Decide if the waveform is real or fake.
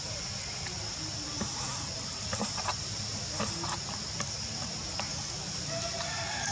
real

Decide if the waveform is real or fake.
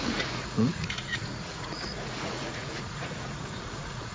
fake